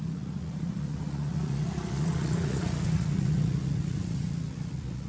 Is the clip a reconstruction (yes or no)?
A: yes